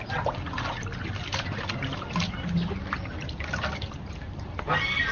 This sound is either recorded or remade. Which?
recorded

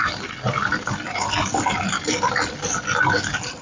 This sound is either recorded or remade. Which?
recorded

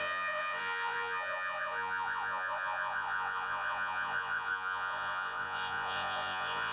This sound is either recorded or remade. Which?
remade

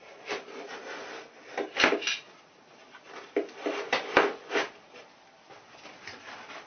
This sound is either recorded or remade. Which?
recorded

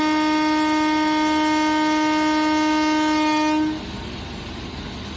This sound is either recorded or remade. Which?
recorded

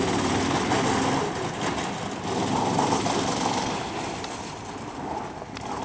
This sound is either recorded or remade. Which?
recorded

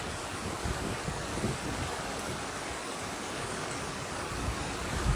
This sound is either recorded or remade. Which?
remade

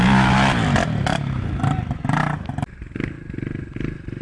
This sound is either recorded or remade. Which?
recorded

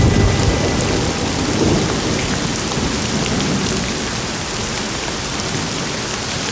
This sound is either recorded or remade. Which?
recorded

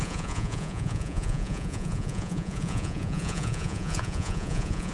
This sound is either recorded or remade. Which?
remade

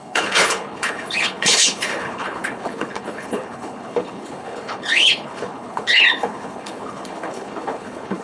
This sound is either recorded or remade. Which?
remade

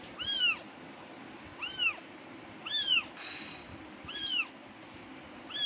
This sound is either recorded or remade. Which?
recorded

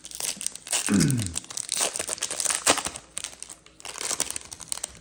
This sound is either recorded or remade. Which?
recorded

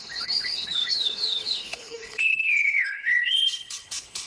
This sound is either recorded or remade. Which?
remade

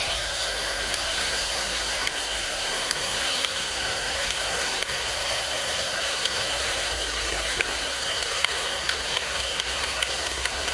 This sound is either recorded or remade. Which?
remade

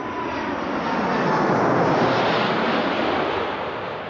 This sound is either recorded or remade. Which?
recorded